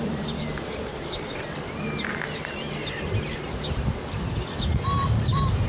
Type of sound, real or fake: real